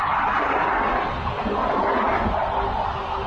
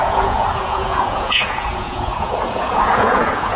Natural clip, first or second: first